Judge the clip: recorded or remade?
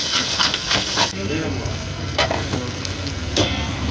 remade